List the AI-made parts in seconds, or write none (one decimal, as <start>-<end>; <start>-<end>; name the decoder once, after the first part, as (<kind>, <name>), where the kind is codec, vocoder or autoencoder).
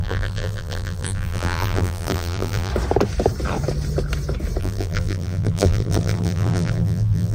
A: 0.0-2.7 (vocoder, BigVGAN v2); 4.6-7.3